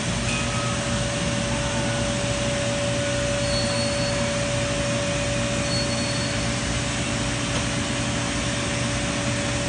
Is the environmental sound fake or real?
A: real